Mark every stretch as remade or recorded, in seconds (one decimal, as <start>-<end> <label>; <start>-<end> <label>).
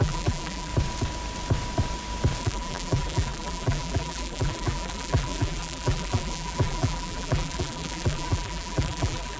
0.0-0.7 remade; 0.7-2.4 recorded; 2.4-9.4 remade